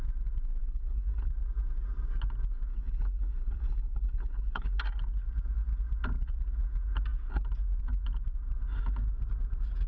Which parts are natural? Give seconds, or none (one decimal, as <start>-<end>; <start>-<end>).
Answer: 0.0-0.6; 1.3-2.7; 4.8-9.9